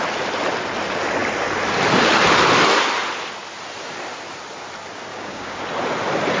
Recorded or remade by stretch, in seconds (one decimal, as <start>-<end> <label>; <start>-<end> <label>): 0.0-5.1 recorded; 5.1-5.6 remade; 5.6-6.4 recorded